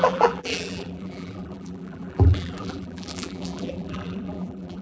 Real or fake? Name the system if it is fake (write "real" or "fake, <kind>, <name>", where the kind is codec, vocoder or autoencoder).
fake, vocoder, BigVGAN v2